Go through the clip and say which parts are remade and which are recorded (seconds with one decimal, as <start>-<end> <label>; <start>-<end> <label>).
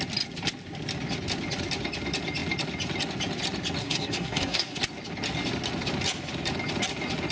0.0-3.8 recorded; 3.8-4.8 remade; 4.8-7.3 recorded